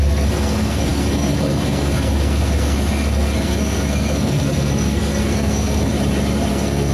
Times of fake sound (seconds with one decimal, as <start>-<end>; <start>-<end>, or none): 0.0-5.9; 6.5-6.9